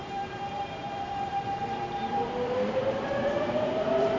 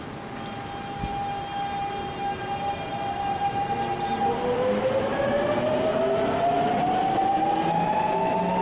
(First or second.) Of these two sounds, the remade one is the first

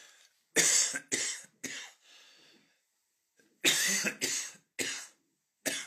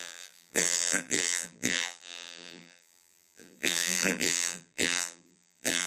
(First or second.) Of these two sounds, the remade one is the second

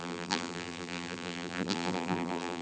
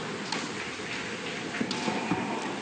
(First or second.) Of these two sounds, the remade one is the first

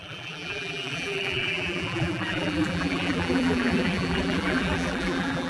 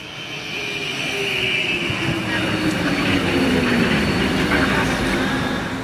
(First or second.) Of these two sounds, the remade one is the first